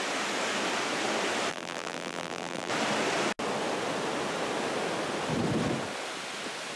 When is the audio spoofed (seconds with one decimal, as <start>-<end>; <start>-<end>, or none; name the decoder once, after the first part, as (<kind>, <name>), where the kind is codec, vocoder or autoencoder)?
1.5-2.7 (vocoder, BigVGAN v2)